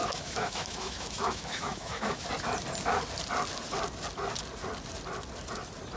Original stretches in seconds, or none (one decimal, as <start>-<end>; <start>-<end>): 2.3-6.0